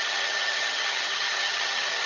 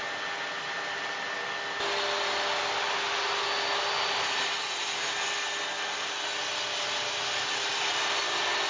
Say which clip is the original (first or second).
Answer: second